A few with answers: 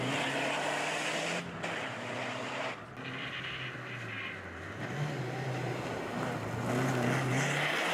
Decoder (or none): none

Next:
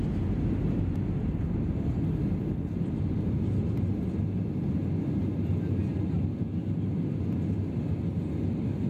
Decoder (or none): none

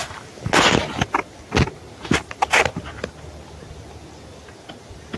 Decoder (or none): none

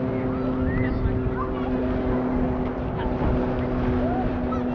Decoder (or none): none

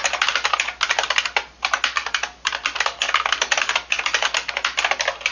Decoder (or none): none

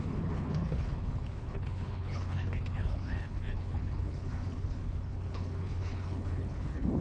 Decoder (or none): codec, HILCodec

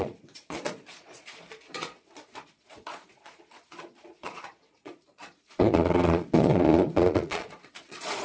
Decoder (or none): vocoder, Vocos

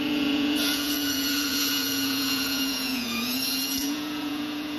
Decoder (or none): vocoder, Vocos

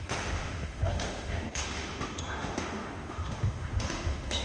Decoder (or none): autoencoder, DAC-VAE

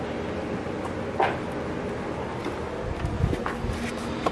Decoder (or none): none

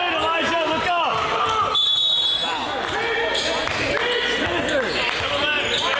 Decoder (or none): none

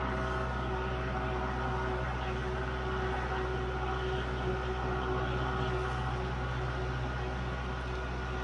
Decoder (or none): none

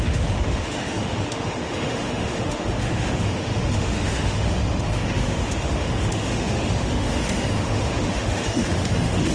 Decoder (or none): autoencoder, DAC-VAE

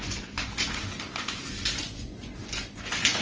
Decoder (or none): vocoder, Vocos